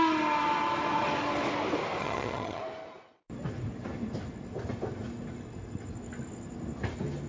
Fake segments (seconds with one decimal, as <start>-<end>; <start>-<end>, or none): 2.0-2.6